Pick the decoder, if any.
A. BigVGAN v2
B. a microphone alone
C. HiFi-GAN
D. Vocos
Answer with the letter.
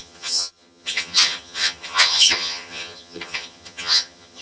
C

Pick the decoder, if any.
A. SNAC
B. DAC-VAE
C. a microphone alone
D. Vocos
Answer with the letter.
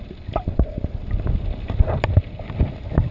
C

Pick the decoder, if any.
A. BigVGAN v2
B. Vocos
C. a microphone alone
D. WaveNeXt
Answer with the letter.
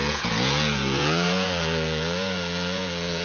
B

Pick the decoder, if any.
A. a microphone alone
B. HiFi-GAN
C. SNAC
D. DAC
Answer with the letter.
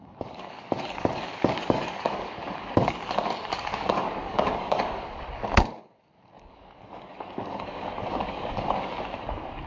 D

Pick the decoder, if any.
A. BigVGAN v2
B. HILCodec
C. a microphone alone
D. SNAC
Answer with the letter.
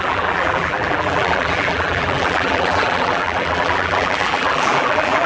A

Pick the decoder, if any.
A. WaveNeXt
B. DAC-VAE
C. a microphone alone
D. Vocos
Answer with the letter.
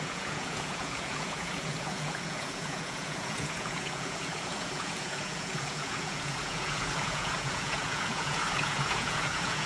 D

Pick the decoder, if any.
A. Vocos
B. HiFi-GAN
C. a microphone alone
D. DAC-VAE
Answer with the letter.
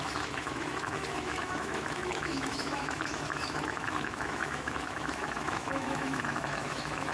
D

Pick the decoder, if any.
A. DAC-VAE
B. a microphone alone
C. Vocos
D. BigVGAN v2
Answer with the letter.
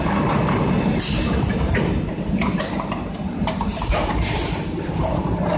D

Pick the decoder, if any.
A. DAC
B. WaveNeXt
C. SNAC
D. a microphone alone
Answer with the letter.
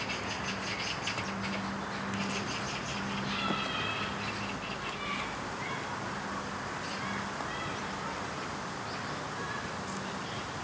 D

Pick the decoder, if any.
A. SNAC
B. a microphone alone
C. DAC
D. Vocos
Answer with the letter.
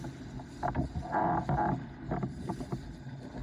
B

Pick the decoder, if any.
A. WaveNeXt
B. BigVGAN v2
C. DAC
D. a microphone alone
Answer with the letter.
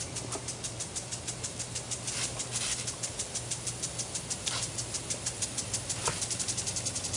D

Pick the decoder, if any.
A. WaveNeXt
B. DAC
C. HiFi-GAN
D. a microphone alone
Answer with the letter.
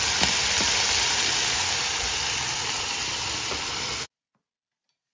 D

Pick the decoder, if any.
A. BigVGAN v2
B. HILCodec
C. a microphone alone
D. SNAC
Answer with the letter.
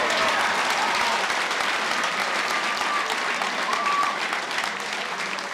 C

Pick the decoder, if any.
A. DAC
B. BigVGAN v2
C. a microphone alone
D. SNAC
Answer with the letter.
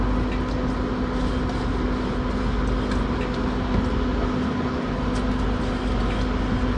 C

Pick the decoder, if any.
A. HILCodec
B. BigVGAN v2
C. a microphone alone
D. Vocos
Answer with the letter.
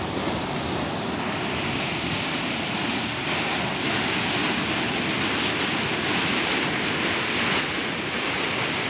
C